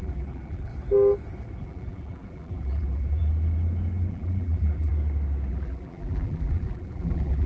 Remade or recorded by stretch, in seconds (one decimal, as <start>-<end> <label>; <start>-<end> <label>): 0.0-0.7 remade; 0.7-1.6 recorded; 1.6-3.2 remade; 3.2-4.1 recorded; 4.1-4.9 remade; 4.9-5.5 recorded; 5.5-7.5 remade